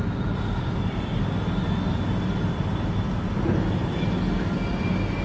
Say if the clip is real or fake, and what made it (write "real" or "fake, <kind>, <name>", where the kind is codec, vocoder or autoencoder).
real